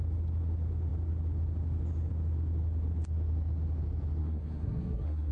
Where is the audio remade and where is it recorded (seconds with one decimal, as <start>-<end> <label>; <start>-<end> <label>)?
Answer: 0.0-4.2 recorded; 4.2-5.3 remade